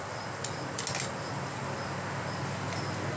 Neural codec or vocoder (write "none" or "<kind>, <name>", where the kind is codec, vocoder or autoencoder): none